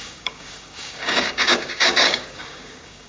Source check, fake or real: fake